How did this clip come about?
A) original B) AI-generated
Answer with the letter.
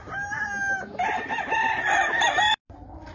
A